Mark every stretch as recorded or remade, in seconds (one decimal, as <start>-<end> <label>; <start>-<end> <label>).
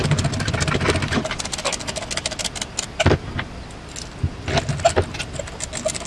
0.0-6.1 recorded